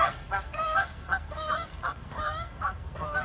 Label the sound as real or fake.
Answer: fake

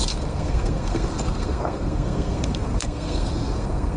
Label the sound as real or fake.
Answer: fake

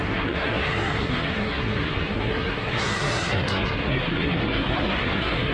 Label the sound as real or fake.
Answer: fake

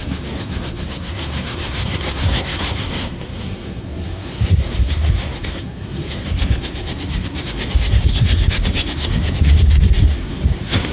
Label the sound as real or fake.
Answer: fake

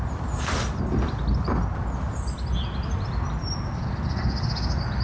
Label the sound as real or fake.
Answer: real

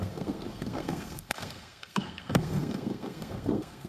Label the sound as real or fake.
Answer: fake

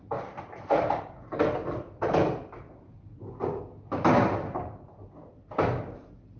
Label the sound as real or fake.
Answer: real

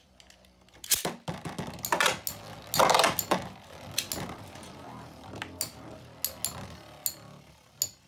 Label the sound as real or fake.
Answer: real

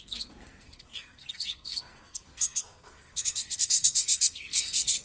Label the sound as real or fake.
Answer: fake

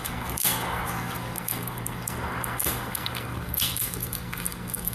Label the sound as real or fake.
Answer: fake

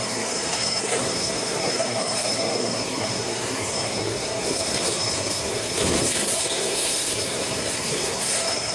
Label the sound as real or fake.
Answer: fake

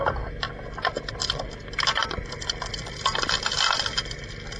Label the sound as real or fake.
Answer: real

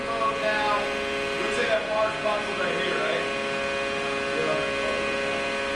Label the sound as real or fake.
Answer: real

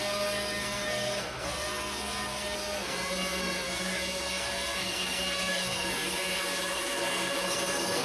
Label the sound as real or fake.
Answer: fake